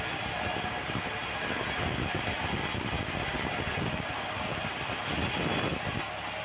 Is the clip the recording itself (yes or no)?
yes